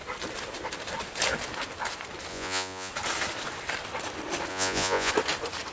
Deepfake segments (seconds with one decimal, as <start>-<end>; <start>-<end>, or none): 2.3-2.9; 4.5-5.1